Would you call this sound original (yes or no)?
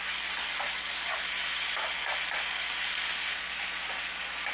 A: yes